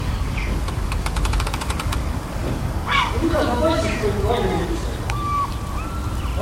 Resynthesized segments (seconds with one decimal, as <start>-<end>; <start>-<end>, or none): 0.0-5.5